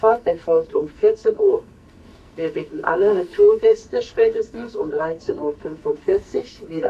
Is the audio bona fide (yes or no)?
no